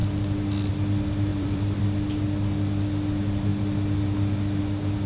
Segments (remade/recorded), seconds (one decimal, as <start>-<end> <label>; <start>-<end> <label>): 0.0-1.3 recorded; 1.3-1.8 remade; 1.8-5.1 recorded

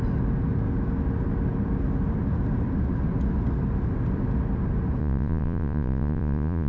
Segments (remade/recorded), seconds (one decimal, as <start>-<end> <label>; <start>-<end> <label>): 0.0-5.0 recorded; 5.0-6.7 remade

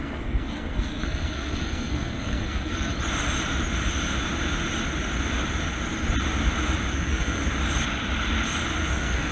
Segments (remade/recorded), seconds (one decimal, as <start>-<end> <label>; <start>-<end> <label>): 0.0-2.9 remade; 2.9-6.9 recorded; 6.9-7.4 remade; 7.4-8.8 recorded; 8.8-9.3 remade

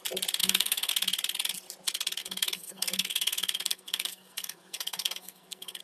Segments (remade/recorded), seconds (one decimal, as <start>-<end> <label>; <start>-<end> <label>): 0.0-0.4 recorded; 0.4-0.9 remade; 0.9-2.2 recorded; 2.2-5.8 remade

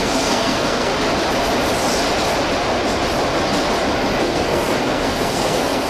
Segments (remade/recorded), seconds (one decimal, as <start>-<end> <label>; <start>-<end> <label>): 0.0-0.9 remade; 0.9-4.2 recorded; 4.2-5.9 remade